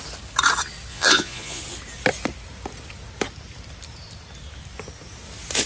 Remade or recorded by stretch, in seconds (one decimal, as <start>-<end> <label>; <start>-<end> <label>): 0.0-0.9 recorded; 0.9-1.6 remade; 1.6-5.7 recorded